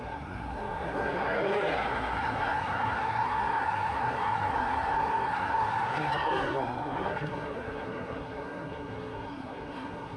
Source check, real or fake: fake